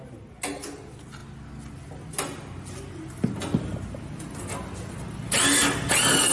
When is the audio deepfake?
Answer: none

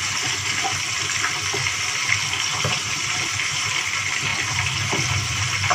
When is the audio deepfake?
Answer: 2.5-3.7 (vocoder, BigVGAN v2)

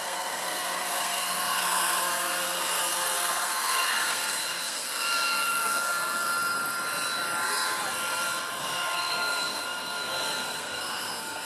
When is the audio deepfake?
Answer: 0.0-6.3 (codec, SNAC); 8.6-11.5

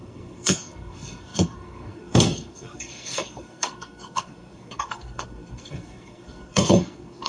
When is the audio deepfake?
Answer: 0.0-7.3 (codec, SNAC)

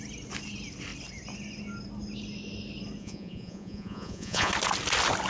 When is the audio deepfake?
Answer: 3.0-4.5 (vocoder, Vocos)

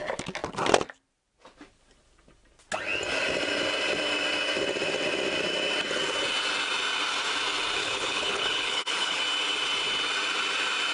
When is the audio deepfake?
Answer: 7.8-9.2 (codec, HILCodec)

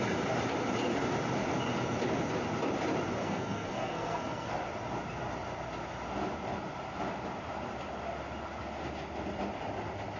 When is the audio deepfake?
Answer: 3.2-4.5 (codec, SNAC)

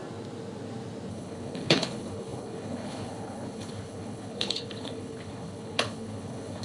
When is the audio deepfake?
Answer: 1.1-6.6 (codec, HILCodec)